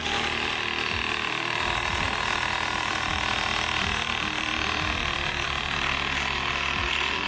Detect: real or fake fake